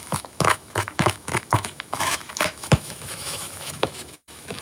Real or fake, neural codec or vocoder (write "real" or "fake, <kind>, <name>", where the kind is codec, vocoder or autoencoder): fake, autoencoder, DAC-VAE